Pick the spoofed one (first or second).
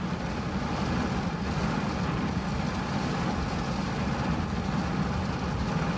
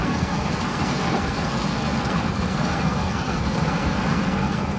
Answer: second